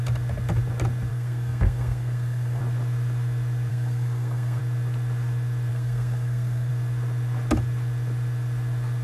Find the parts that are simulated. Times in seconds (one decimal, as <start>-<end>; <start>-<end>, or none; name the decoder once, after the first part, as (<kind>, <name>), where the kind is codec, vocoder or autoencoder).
1.1-2.6 (codec, SNAC); 3.7-4.6; 5.7-6.7